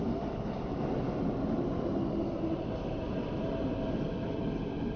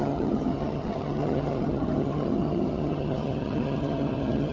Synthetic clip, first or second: second